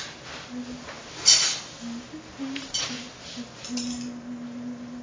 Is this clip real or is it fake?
real